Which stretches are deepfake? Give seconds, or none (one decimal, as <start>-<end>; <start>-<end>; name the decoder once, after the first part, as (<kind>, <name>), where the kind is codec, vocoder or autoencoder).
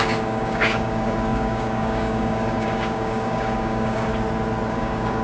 0.0-4.1 (codec, DAC); 4.7-5.2